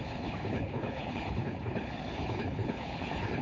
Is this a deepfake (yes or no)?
yes